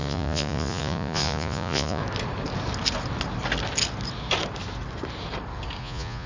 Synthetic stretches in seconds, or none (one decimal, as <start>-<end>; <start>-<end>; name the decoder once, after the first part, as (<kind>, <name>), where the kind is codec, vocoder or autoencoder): 0.0-2.0 (vocoder, Vocos); 5.8-6.3